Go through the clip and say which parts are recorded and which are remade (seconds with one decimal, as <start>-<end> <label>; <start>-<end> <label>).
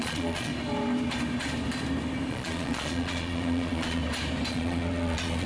0.0-0.5 remade; 0.5-2.3 recorded; 2.3-4.0 remade; 4.0-4.5 recorded; 4.5-5.5 remade